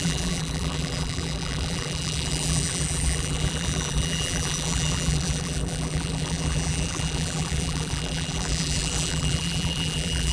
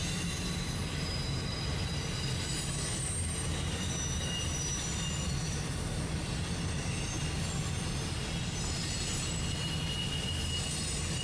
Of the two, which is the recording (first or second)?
second